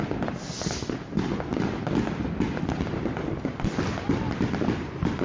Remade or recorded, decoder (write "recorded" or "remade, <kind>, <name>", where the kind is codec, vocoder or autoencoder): recorded